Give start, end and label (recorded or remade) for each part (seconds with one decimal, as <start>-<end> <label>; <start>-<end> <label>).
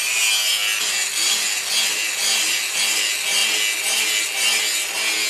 0.0-5.3 recorded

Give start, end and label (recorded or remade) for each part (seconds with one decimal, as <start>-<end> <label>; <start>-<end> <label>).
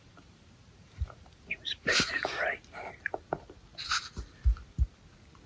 0.0-2.2 remade; 2.2-5.5 recorded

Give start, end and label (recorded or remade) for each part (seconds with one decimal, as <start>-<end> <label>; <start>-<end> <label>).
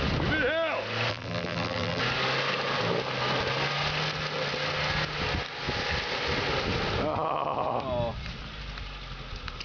0.0-1.1 recorded; 1.1-2.0 remade; 2.0-9.6 recorded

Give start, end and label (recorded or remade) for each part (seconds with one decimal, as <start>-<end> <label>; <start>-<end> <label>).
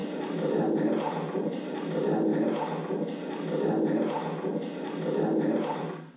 0.0-1.8 remade; 1.8-6.2 recorded